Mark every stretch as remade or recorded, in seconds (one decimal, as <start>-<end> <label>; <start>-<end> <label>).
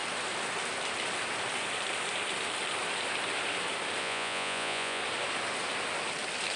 0.0-4.0 recorded; 4.0-5.0 remade; 5.0-6.6 recorded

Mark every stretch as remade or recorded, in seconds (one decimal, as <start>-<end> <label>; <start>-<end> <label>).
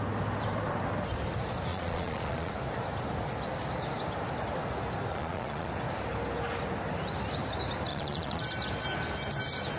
0.0-1.7 recorded; 1.7-2.5 remade; 2.5-5.1 recorded; 5.1-5.7 remade; 5.7-7.9 recorded; 7.9-8.4 remade; 8.4-9.8 recorded